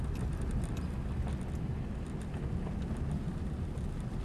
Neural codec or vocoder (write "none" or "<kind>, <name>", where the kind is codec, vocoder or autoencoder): none